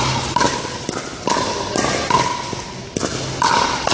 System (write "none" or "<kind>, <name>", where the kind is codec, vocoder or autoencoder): none